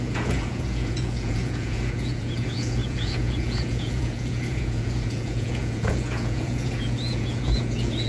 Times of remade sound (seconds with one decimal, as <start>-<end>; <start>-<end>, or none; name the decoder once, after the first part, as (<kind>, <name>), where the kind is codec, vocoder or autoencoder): 0.0-8.1 (vocoder, Vocos)